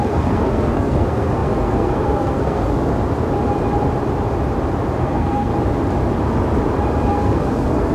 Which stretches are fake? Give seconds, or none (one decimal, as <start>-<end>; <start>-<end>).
0.0-2.9; 5.0-5.5; 7.1-7.9